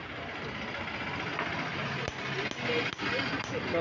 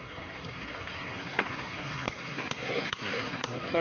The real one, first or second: first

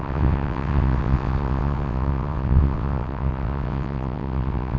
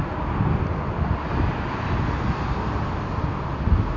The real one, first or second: second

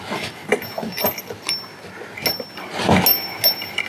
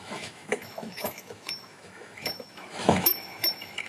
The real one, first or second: first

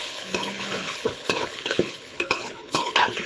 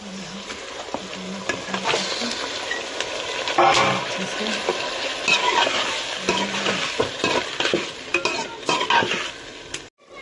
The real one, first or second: second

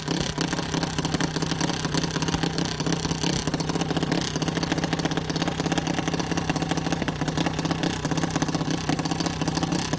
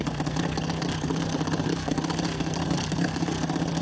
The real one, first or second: first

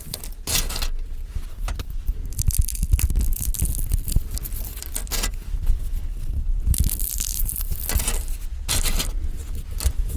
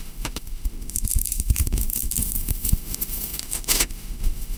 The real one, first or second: first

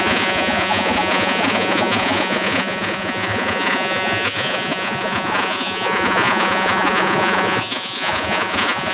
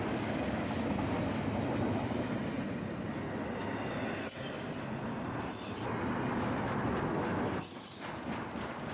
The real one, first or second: second